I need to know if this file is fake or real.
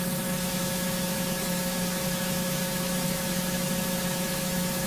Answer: fake